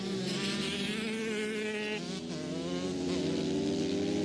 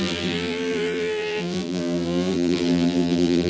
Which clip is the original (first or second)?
first